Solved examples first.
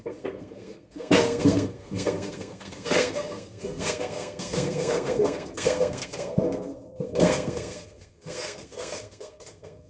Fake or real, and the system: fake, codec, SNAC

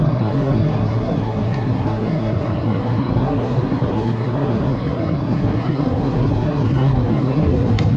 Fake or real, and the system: fake, codec, SNAC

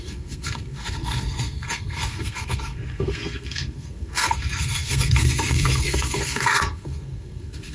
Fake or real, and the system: fake, codec, SNAC